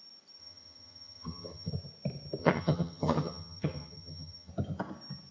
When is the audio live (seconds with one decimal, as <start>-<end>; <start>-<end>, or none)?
0.0-0.4; 1.7-2.4; 4.5-5.3